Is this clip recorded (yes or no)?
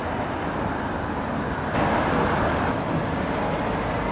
yes